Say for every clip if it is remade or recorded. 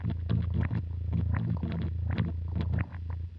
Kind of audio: recorded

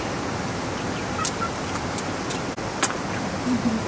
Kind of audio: recorded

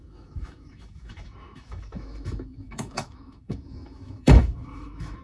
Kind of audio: remade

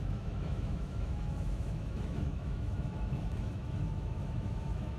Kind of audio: remade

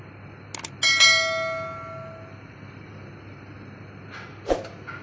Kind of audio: recorded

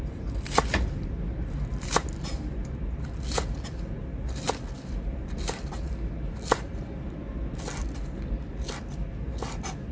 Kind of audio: recorded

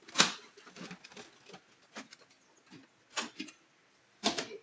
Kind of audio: recorded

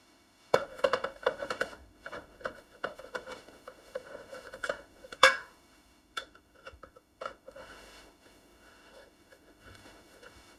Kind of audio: remade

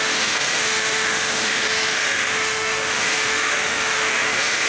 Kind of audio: remade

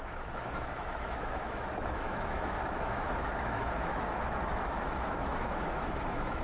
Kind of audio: remade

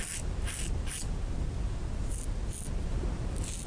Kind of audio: recorded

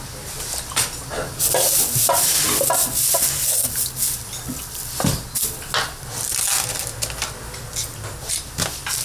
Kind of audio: recorded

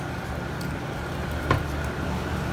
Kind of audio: recorded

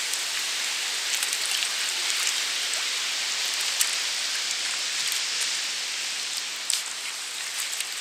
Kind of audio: recorded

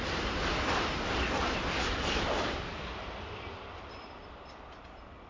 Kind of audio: recorded